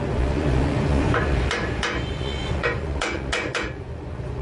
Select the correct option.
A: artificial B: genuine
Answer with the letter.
A